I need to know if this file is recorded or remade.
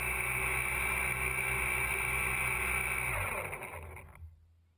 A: recorded